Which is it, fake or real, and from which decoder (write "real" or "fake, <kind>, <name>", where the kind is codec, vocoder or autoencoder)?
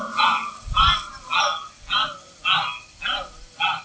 real